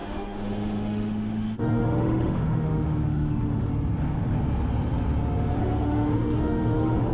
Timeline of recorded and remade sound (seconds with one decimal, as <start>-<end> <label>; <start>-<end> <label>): 0.0-3.7 remade; 3.7-5.6 recorded; 5.6-7.1 remade